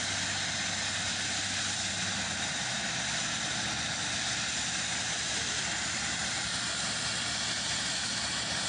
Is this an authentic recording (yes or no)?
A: yes